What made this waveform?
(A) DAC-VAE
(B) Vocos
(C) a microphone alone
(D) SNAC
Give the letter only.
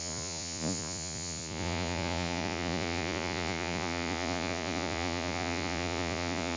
B